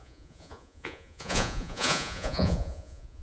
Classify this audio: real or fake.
fake